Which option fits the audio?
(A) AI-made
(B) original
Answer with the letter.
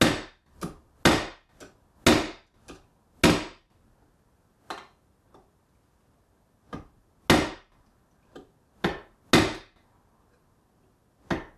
B